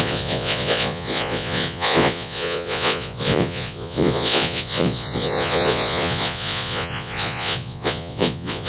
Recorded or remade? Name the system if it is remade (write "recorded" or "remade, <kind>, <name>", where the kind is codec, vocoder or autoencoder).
remade, vocoder, Vocos